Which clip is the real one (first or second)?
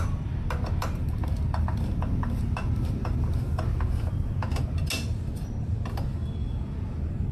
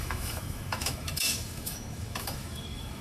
first